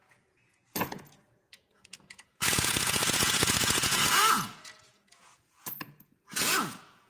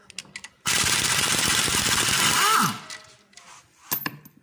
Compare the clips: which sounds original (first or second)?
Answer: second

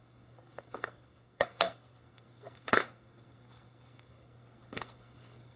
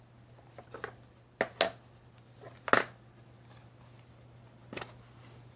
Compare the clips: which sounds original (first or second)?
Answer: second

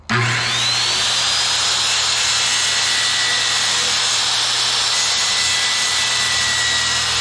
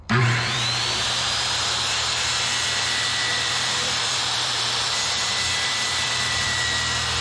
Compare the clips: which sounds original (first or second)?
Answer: first